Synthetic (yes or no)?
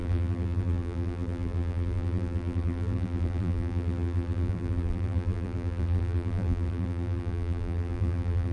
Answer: yes